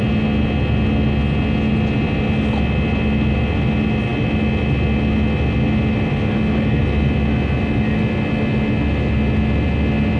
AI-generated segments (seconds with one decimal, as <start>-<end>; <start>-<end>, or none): none